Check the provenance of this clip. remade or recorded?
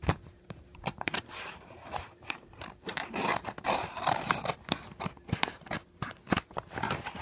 remade